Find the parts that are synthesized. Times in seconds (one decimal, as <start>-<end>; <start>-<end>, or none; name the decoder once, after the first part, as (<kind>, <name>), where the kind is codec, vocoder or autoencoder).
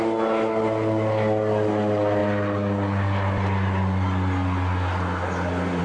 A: none